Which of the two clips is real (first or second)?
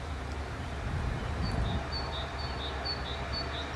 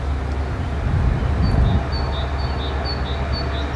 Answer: second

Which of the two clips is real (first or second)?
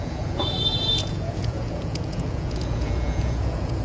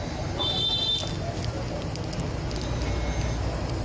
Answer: second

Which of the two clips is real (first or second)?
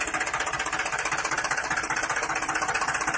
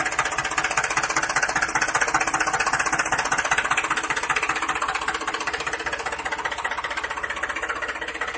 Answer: second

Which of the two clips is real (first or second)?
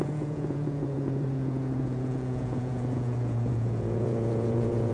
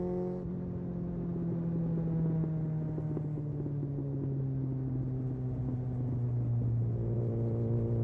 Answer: second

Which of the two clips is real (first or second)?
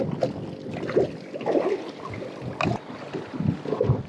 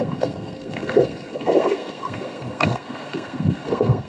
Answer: first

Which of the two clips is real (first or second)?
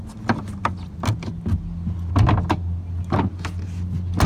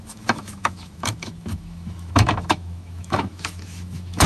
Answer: first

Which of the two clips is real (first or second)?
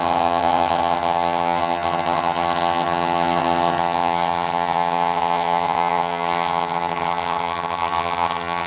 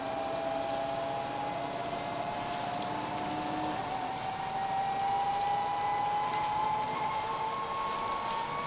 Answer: second